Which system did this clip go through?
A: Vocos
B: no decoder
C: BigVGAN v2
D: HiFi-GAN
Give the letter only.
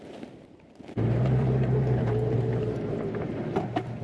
C